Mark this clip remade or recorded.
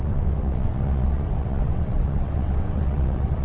remade